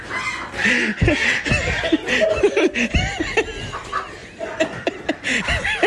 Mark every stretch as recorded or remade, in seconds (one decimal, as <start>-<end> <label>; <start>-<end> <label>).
0.0-4.2 recorded; 4.2-4.9 remade; 4.9-5.9 recorded